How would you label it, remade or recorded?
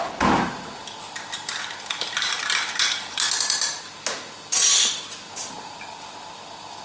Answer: recorded